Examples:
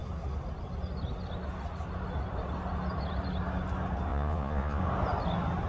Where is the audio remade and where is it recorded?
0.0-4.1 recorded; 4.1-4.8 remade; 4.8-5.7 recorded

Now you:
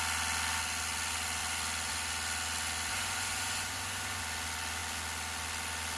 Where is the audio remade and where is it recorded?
0.0-2.9 recorded; 2.9-4.2 remade; 4.2-6.0 recorded

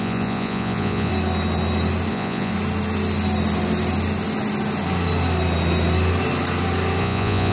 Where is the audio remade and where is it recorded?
0.0-1.1 remade; 1.1-2.1 recorded; 2.1-2.5 remade; 2.5-7.0 recorded; 7.0-7.5 remade

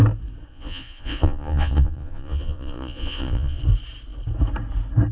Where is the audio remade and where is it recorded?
0.0-0.5 recorded; 0.5-3.6 remade; 3.6-5.1 recorded

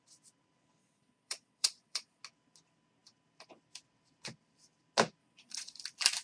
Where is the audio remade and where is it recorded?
0.0-0.8 recorded; 0.8-2.2 remade; 2.2-5.2 recorded; 5.2-5.8 remade; 5.8-6.2 recorded

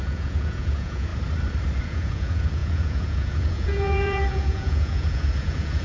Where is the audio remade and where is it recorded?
0.0-1.1 remade; 1.1-1.8 recorded; 1.8-5.8 remade